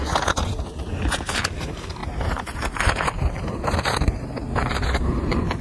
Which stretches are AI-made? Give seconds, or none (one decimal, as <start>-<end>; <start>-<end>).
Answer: 0.7-5.6